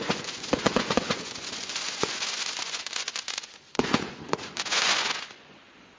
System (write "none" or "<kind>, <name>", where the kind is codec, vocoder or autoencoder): vocoder, Vocos